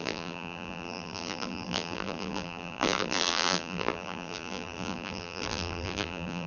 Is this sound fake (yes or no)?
yes